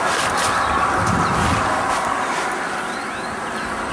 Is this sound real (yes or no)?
yes